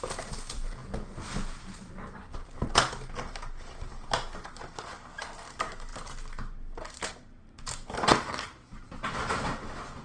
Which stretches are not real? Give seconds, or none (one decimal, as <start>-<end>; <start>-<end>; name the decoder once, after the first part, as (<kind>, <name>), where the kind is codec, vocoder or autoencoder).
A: none